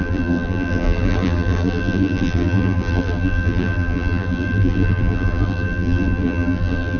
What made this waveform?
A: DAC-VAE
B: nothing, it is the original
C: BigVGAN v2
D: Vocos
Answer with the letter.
C